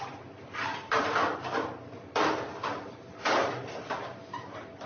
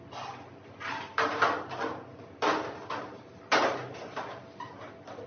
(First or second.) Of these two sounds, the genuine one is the second